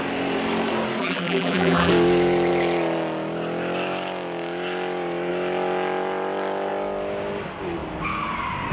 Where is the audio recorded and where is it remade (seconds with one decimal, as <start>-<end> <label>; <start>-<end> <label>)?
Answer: 0.0-1.0 recorded; 1.0-1.9 remade; 1.9-8.7 recorded